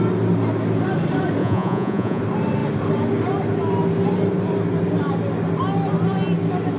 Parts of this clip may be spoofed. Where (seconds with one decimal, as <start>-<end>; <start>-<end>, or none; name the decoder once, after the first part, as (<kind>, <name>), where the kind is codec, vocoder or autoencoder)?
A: 1.4-2.2 (vocoder, Vocos)